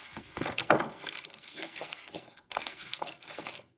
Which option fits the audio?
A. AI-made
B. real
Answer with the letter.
A